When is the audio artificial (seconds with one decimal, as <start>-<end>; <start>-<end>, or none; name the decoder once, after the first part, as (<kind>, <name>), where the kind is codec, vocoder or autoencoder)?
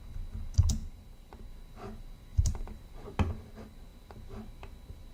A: 0.8-1.5 (vocoder, BigVGAN v2); 2.3-2.9